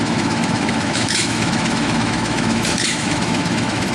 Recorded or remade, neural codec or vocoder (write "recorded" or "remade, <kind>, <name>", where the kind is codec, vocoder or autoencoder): remade, autoencoder, DAC-VAE